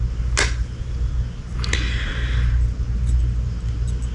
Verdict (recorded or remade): recorded